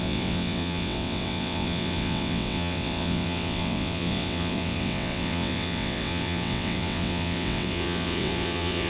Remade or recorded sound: remade